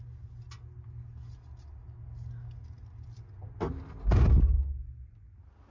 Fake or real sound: real